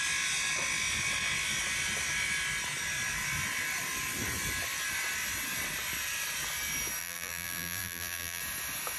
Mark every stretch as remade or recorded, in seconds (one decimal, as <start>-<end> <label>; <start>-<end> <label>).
0.0-7.0 recorded; 7.0-8.4 remade; 8.4-9.0 recorded